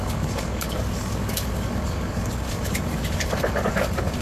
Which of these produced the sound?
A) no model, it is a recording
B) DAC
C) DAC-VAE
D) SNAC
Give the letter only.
B